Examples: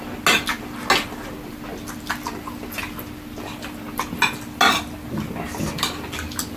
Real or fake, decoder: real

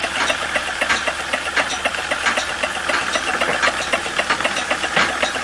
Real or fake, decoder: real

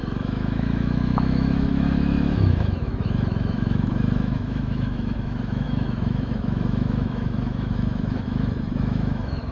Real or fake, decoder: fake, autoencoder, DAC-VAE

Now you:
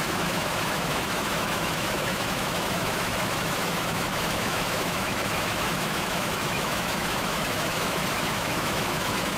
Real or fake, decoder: fake, autoencoder, DAC-VAE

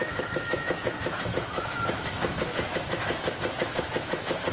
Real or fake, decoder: fake, autoencoder, DAC-VAE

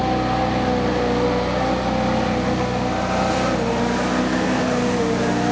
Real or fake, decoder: real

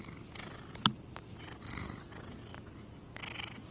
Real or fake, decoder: real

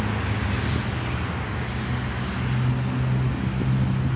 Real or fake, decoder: real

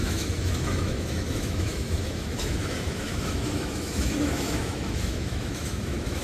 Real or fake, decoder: fake, autoencoder, DAC-VAE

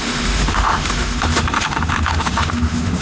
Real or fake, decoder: fake, autoencoder, DAC-VAE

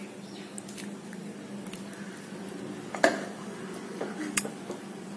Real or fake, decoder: real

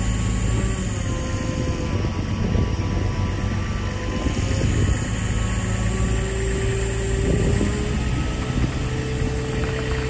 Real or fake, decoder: real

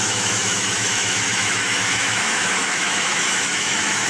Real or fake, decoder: fake, autoencoder, DAC-VAE